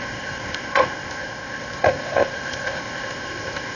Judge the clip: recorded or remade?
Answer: remade